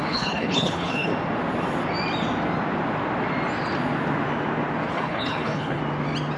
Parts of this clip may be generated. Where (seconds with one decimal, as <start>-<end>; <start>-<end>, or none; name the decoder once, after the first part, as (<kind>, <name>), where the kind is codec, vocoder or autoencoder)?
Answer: 0.0-1.1 (codec, HILCodec); 4.9-5.8